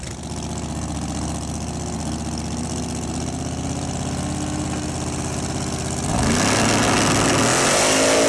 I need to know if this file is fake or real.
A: real